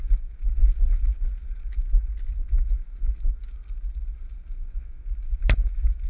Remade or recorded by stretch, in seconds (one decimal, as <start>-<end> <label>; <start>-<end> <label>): 0.0-6.1 recorded